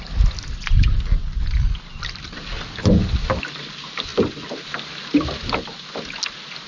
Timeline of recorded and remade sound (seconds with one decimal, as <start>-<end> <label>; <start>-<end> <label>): 0.0-6.7 recorded